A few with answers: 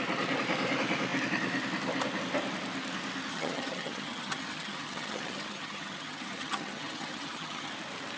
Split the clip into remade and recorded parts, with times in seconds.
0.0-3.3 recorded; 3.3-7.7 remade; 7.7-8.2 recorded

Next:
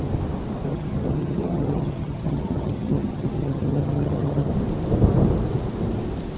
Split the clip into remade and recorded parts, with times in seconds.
0.0-0.7 recorded; 0.7-4.5 remade; 4.5-6.4 recorded

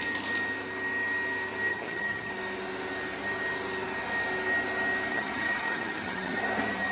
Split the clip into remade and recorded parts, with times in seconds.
0.0-1.7 recorded; 1.7-2.3 remade; 2.3-5.1 recorded; 5.1-6.4 remade; 6.4-6.9 recorded

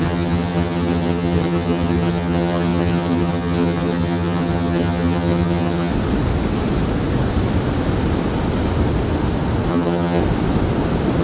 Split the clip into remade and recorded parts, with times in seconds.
0.0-5.9 remade; 5.9-9.7 recorded; 9.7-10.2 remade; 10.2-11.2 recorded

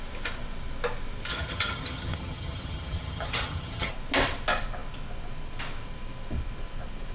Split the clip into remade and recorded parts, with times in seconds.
0.0-1.3 recorded; 1.3-3.9 remade; 3.9-7.1 recorded